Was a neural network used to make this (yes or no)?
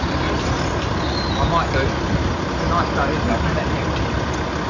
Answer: no